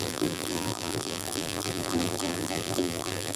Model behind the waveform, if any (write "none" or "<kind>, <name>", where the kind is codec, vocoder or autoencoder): vocoder, BigVGAN v2